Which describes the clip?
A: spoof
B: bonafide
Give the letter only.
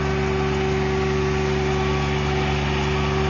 B